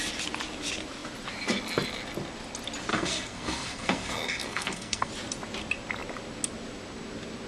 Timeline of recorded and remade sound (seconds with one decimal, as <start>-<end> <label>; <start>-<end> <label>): 0.0-2.9 recorded; 2.9-5.1 remade; 5.1-7.5 recorded

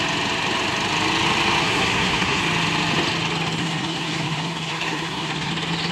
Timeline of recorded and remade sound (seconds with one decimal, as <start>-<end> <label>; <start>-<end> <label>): 0.0-1.6 recorded; 1.6-2.4 remade; 2.4-3.6 recorded; 3.6-5.5 remade; 5.5-5.9 recorded

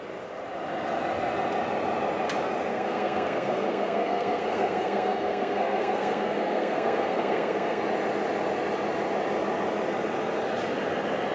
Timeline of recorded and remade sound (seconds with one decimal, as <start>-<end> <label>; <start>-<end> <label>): 0.0-2.7 recorded; 2.7-7.8 remade; 7.8-11.3 recorded

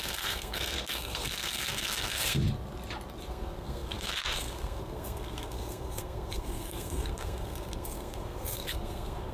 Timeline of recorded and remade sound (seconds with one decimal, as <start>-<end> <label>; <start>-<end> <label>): 0.0-2.4 remade; 2.4-3.3 recorded; 3.3-9.3 remade

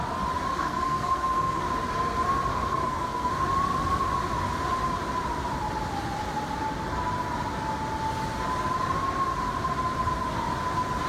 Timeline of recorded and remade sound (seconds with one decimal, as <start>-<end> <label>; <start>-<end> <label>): 0.0-0.5 recorded; 0.5-1.6 remade; 1.6-2.5 recorded; 2.5-3.3 remade; 3.3-11.1 recorded

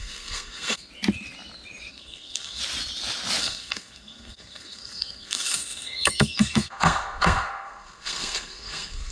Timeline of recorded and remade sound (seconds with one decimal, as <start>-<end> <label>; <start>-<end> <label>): 0.0-0.9 remade; 0.9-1.9 recorded; 1.9-2.6 remade; 2.6-3.4 recorded; 3.4-9.1 remade

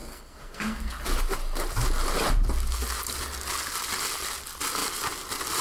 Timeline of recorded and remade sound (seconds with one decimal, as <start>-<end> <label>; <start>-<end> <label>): 0.0-0.9 remade; 0.9-5.6 recorded